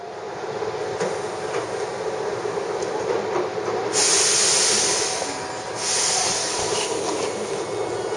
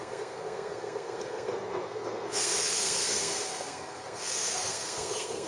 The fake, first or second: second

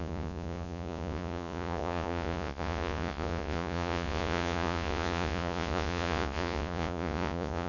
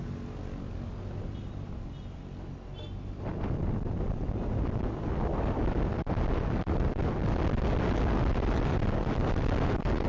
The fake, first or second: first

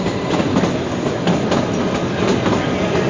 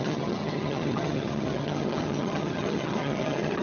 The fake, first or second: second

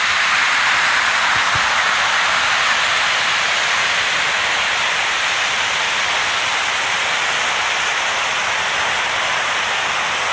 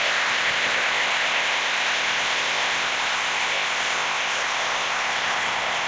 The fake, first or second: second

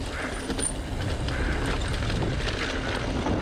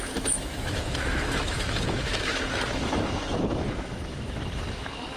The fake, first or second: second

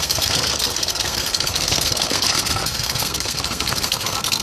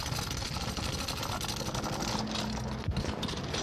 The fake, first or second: first